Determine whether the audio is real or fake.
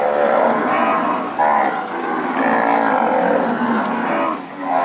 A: real